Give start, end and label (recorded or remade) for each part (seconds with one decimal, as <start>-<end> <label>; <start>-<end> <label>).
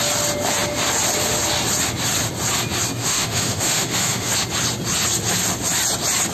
0.0-3.0 recorded; 3.0-4.3 remade; 4.3-6.3 recorded